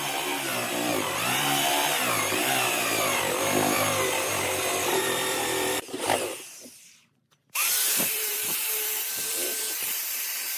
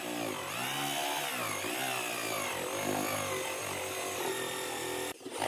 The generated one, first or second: first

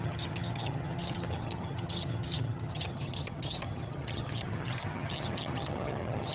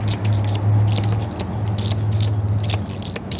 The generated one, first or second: first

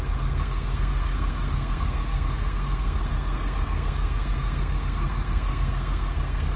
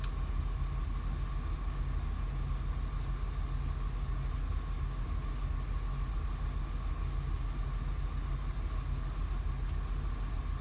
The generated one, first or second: first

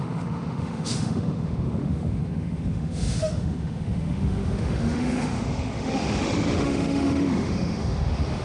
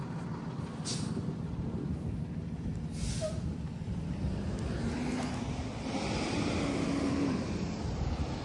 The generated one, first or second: first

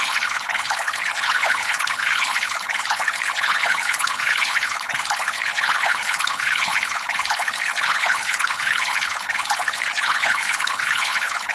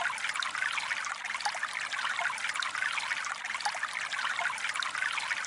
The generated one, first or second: first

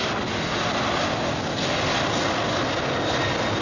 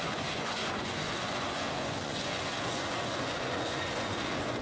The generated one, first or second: second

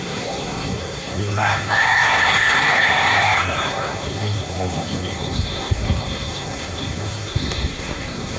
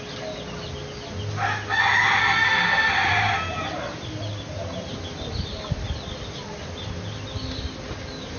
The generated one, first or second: first